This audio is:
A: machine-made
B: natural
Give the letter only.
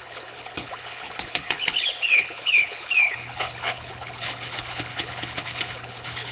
A